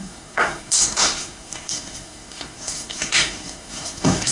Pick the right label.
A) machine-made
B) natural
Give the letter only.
A